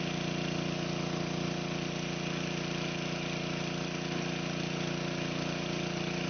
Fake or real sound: real